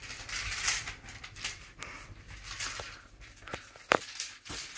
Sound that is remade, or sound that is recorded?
remade